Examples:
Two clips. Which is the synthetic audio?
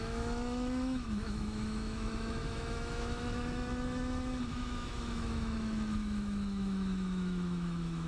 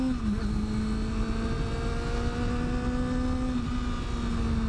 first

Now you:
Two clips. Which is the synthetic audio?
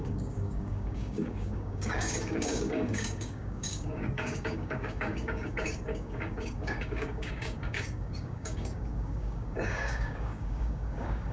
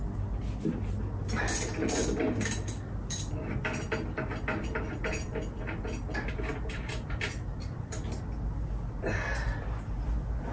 first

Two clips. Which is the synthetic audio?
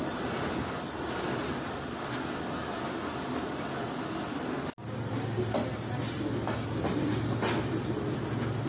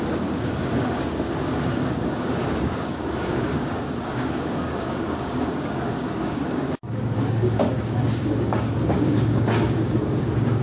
second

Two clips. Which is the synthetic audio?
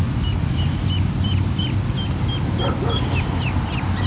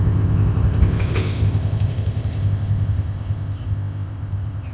second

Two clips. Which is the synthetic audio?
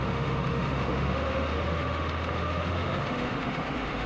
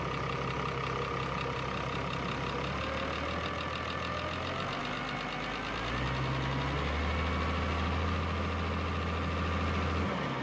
first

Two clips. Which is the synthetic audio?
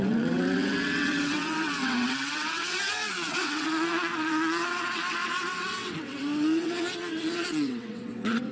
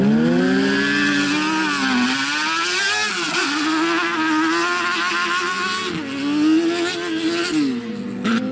first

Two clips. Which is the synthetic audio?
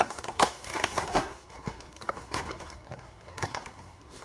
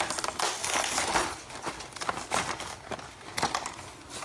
first